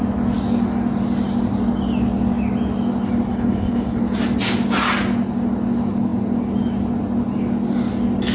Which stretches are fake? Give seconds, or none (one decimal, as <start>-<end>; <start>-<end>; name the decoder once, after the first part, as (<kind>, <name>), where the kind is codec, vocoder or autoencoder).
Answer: 3.3-4.0 (codec, HILCodec)